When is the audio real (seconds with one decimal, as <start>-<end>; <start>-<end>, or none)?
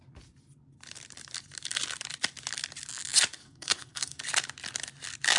0.0-3.4; 4.2-5.4